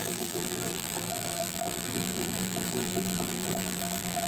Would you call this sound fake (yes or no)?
yes